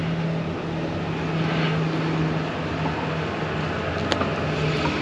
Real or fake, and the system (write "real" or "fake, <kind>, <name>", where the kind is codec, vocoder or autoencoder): real